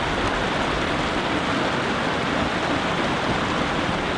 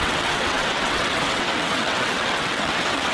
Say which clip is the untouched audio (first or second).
first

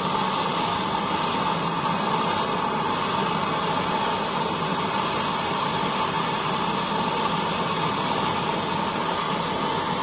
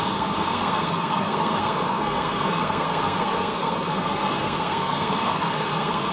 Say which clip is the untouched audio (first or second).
first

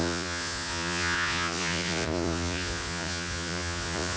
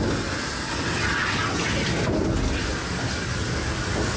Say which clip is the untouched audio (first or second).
second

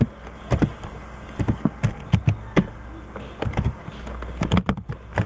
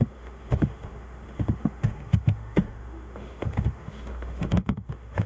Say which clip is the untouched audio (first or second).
first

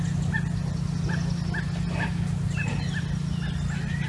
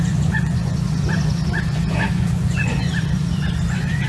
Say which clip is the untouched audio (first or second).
first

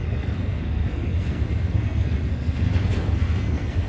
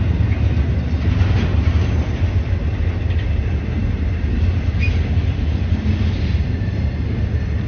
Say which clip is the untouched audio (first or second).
second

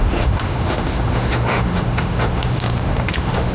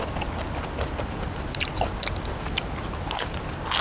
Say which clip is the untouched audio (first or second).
second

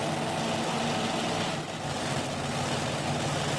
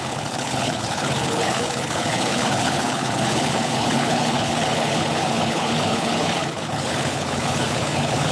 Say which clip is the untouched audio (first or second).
first